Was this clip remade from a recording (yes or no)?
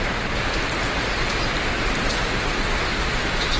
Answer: no